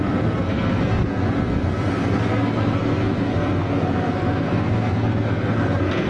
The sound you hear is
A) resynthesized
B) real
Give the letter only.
A